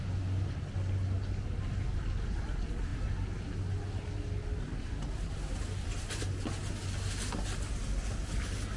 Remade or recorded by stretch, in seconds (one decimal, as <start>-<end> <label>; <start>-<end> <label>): 0.0-8.8 recorded